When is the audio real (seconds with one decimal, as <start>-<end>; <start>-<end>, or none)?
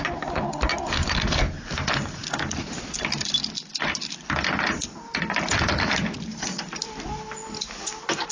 0.0-8.3